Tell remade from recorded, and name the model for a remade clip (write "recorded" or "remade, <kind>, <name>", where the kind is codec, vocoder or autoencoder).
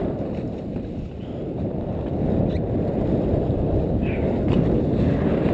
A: recorded